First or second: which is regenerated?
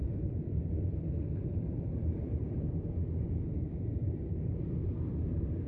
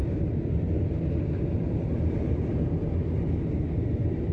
first